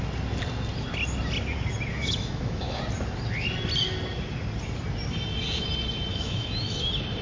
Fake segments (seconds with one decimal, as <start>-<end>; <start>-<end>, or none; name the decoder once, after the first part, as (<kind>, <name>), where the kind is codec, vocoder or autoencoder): 1.9-2.8 (autoencoder, DAC-VAE); 6.1-6.8